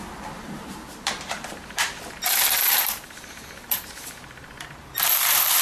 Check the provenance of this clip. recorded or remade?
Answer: remade